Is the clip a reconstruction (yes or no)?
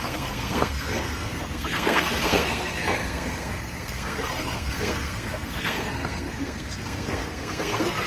yes